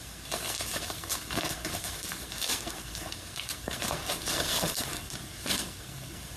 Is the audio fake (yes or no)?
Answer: yes